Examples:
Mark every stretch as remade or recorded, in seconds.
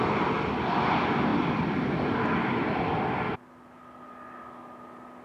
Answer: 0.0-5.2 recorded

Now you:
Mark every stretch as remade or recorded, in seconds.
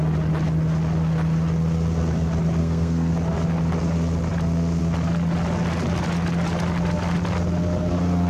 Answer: 0.0-2.6 recorded; 2.6-3.1 remade; 3.1-8.3 recorded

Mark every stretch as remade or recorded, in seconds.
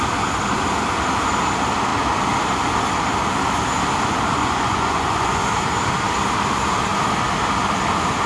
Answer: 0.0-4.4 recorded; 4.4-5.4 remade; 5.4-8.3 recorded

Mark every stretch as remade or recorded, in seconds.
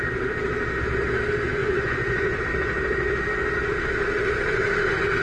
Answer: 0.0-1.6 recorded; 1.6-2.4 remade; 2.4-5.2 recorded